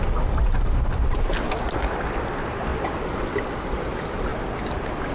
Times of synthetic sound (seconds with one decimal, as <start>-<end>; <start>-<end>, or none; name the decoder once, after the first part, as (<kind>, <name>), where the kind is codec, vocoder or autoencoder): 2.7-3.9 (vocoder, BigVGAN v2)